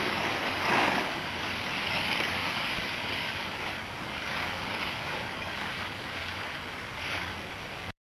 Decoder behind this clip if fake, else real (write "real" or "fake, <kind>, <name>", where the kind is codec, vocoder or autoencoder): fake, codec, DAC